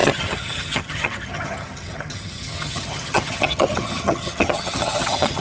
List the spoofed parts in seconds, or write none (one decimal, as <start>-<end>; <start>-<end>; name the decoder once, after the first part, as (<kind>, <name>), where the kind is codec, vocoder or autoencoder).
0.0-5.4 (vocoder, HiFi-GAN)